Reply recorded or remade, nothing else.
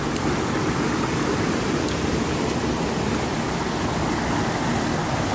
recorded